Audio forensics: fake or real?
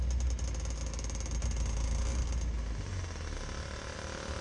real